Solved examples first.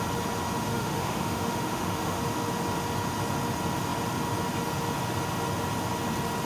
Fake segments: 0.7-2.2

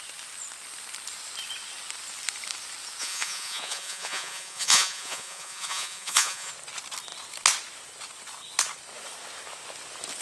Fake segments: 3.0-6.5

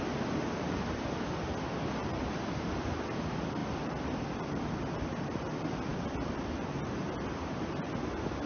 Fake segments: 2.0-2.7; 3.6-4.7; 5.9-7.0